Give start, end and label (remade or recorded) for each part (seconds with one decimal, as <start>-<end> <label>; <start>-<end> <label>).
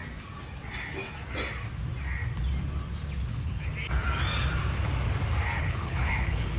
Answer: 0.0-3.2 recorded; 3.2-3.7 remade; 3.7-5.6 recorded; 5.6-6.6 remade